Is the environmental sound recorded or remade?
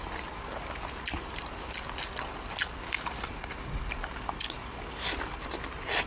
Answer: recorded